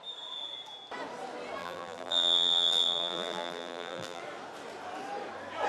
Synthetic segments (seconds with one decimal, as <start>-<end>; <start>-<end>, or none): 1.6-4.2